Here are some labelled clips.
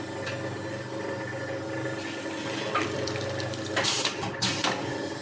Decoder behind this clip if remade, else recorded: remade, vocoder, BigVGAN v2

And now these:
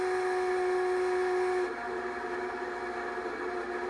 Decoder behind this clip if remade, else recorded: recorded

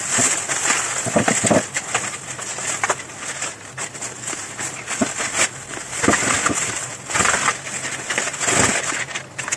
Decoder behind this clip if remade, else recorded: recorded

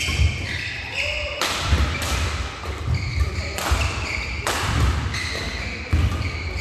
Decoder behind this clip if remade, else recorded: recorded